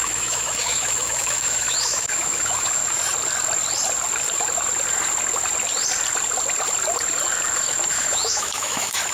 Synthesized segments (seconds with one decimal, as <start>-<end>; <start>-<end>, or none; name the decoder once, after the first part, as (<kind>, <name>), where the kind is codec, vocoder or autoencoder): 0.0-2.8 (autoencoder, DAC-VAE); 7.9-9.1